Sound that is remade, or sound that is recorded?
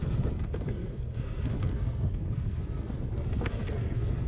remade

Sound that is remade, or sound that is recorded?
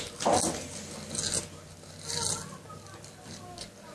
recorded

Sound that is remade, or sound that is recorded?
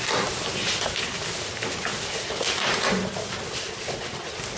recorded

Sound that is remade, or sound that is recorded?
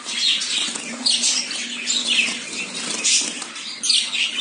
recorded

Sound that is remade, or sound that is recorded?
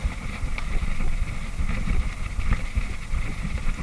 recorded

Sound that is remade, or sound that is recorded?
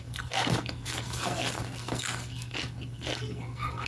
remade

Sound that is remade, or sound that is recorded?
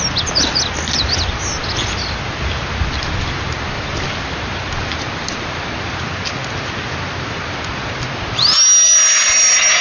recorded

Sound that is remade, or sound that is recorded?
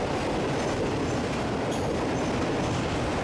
recorded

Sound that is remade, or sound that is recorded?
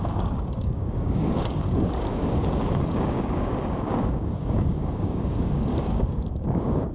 remade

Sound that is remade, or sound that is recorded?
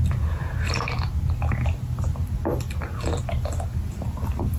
recorded